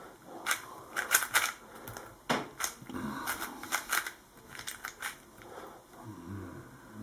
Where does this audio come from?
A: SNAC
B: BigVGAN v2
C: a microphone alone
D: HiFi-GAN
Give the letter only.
C